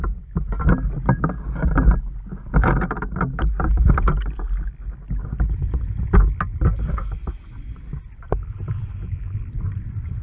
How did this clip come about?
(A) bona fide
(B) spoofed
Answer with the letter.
A